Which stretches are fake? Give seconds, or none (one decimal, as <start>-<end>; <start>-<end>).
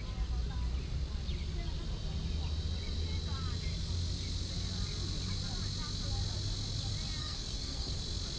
7.2-8.0